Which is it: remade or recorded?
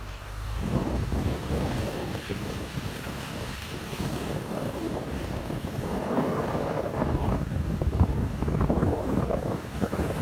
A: remade